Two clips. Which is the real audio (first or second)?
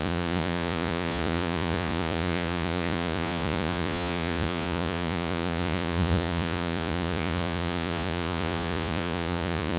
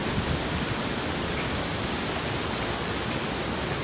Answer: second